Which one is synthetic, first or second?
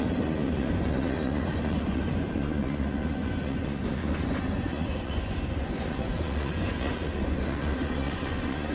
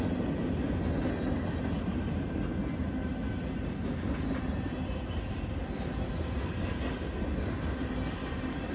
first